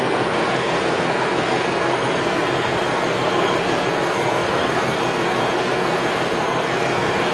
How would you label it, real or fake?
fake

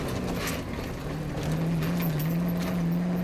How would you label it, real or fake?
real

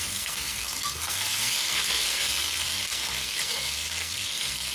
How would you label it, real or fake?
fake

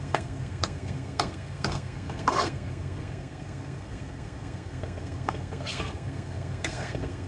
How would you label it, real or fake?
fake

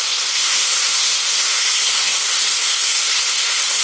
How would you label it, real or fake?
fake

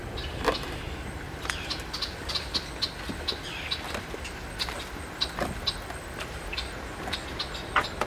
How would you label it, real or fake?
real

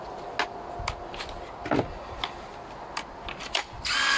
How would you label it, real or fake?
real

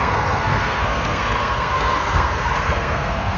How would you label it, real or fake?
fake